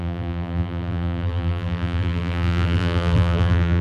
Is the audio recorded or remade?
remade